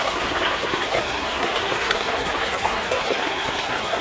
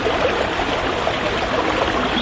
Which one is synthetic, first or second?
first